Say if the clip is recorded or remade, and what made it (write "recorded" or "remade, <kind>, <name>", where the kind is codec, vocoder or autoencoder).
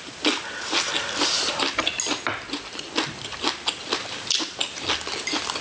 recorded